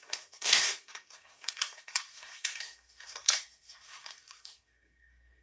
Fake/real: fake